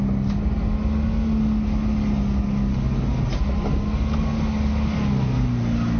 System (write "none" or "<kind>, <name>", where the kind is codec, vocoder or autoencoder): none